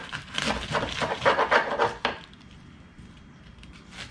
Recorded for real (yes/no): yes